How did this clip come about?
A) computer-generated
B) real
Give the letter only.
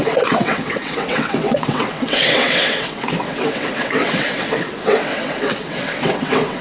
A